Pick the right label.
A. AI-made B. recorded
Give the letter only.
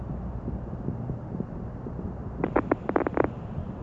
B